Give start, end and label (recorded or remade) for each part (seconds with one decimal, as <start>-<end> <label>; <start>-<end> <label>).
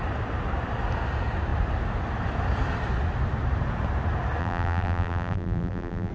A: 0.0-4.4 recorded; 4.4-6.1 remade